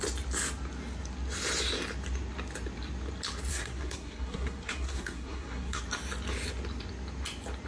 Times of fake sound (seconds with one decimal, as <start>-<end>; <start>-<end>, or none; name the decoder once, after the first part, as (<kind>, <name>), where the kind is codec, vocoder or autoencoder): 3.5-5.8 (codec, SNAC)